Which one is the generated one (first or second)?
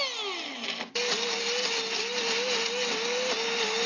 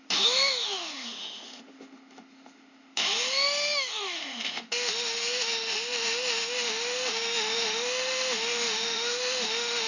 second